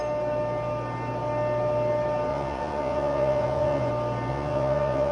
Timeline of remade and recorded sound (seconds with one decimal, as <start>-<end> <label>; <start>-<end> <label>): 0.0-2.3 recorded; 2.3-3.9 remade; 3.9-4.3 recorded; 4.3-5.1 remade